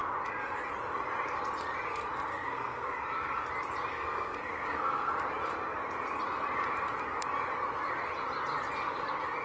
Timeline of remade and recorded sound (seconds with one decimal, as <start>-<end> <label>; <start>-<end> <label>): 0.0-2.3 recorded; 2.3-3.0 remade; 3.0-3.9 recorded; 3.9-5.1 remade; 5.1-9.4 recorded

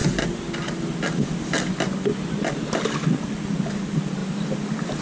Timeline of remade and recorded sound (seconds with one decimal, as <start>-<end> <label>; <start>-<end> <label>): 0.0-5.0 recorded

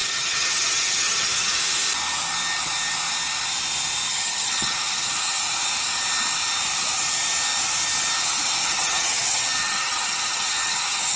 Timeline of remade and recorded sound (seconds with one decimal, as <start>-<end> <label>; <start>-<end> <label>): 0.0-1.6 remade; 1.6-4.1 recorded; 4.1-5.4 remade; 5.4-8.6 recorded; 8.6-11.2 remade

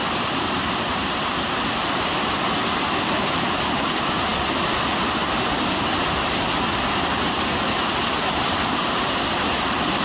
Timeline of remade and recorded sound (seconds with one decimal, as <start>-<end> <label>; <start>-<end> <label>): 0.0-1.1 remade; 1.1-10.0 recorded

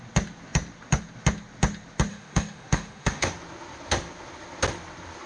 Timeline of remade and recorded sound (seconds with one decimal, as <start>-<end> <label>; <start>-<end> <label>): 0.0-2.1 recorded; 2.1-3.3 remade; 3.3-5.3 recorded